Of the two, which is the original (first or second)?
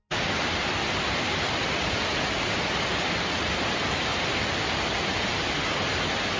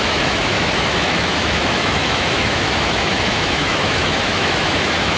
first